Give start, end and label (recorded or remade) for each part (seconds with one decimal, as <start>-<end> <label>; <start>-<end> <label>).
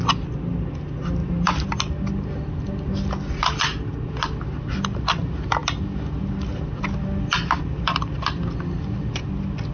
0.0-1.2 recorded; 1.2-1.7 remade; 1.7-9.7 recorded